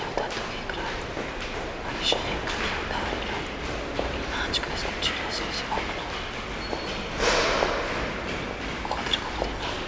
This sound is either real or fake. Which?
real